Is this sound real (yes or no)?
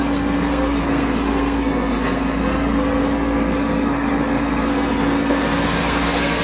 no